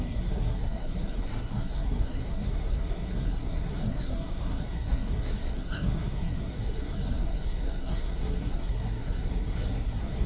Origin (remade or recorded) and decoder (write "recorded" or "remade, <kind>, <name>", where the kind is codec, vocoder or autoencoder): remade, codec, SNAC